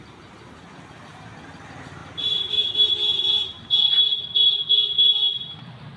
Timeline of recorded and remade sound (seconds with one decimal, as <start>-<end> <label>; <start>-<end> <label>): 0.0-6.0 recorded

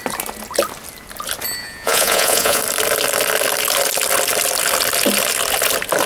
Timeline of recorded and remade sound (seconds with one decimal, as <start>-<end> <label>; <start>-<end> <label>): 0.0-1.6 recorded; 1.6-2.6 remade; 2.6-6.1 recorded

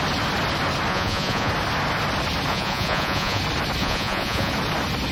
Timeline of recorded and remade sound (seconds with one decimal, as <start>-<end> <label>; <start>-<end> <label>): 0.0-0.9 recorded; 0.9-1.5 remade; 1.5-2.5 recorded; 2.5-3.4 remade; 3.4-3.8 recorded; 3.8-4.5 remade; 4.5-5.1 recorded

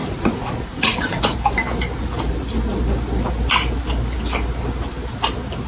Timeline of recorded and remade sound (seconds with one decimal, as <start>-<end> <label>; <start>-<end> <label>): 0.0-1.2 remade; 1.2-5.7 recorded

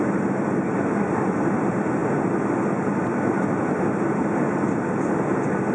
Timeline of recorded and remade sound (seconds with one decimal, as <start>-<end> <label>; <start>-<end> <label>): 0.0-5.7 recorded